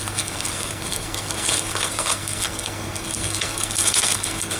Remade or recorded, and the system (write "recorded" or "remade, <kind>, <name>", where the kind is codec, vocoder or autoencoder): remade, codec, SNAC